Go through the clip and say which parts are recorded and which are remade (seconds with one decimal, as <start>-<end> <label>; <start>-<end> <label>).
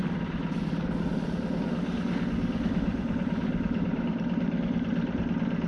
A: 0.0-2.9 recorded; 2.9-5.3 remade; 5.3-5.7 recorded